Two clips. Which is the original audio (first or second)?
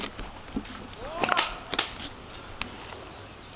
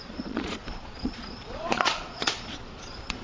first